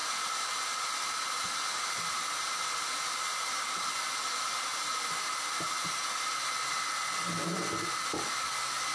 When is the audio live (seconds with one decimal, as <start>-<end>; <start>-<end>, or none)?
0.0-8.9